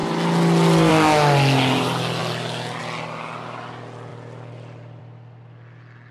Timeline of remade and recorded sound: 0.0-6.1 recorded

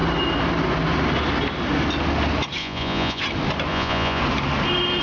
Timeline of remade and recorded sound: 0.0-2.6 recorded; 2.6-3.2 remade; 3.2-3.7 recorded; 3.7-4.2 remade; 4.2-5.0 recorded

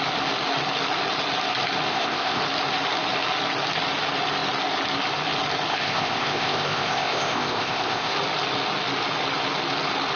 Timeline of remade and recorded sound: 0.0-1.9 recorded; 1.9-2.4 remade; 2.4-5.7 recorded; 5.7-8.1 remade; 8.1-10.2 recorded

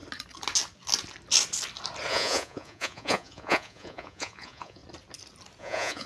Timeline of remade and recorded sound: 0.0-2.1 recorded; 2.1-4.8 remade; 4.8-5.6 recorded; 5.6-6.1 remade

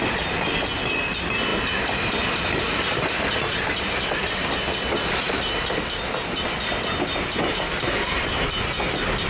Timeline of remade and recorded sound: 0.0-1.5 recorded; 1.5-5.3 remade; 5.3-9.3 recorded